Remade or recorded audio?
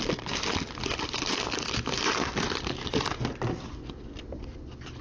recorded